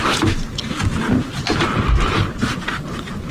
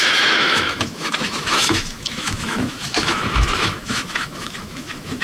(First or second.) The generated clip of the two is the second